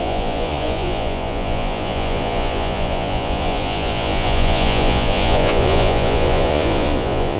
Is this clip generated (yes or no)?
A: yes